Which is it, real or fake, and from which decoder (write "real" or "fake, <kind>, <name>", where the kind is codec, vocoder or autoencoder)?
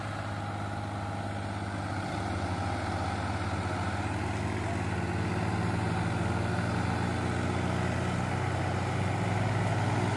real